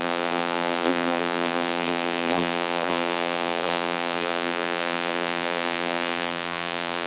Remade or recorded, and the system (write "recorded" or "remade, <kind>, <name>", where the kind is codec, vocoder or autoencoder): remade, vocoder, BigVGAN v2